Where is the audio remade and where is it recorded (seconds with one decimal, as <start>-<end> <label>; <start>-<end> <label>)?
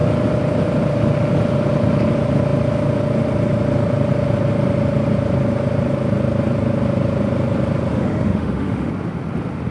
0.0-7.9 recorded; 7.9-8.9 remade; 8.9-9.7 recorded